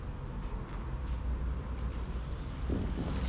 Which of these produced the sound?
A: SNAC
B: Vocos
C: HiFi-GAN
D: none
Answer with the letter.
D